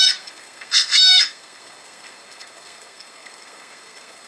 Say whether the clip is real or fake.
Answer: fake